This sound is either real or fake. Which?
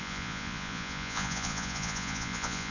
fake